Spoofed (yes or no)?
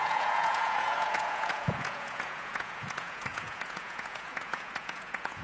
yes